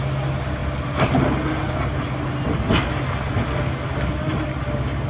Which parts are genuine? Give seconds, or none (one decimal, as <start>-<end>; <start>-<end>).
0.0-5.1